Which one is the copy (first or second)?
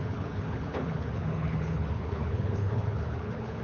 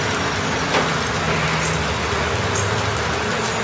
first